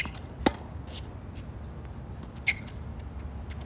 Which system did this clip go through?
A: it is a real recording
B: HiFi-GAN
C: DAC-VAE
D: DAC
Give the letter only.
A